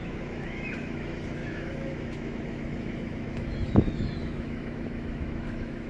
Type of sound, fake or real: fake